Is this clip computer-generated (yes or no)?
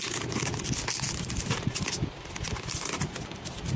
no